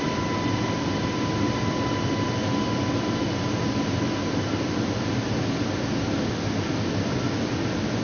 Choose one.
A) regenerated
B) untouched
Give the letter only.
B